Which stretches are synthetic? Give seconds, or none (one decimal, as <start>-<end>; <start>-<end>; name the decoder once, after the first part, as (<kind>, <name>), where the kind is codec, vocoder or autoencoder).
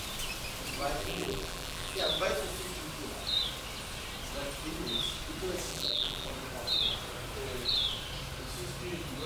1.0-2.0 (vocoder, BigVGAN v2); 5.7-6.3